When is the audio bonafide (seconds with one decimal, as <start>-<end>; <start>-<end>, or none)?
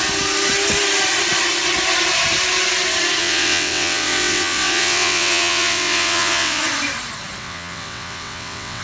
0.0-3.2; 6.6-7.4